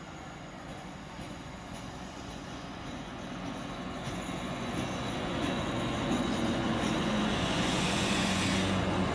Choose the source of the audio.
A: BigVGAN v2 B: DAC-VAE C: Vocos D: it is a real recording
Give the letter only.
C